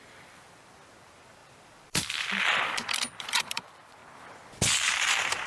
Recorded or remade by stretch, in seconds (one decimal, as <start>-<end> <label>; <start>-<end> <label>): 0.0-4.0 remade; 4.0-5.0 recorded; 5.0-5.5 remade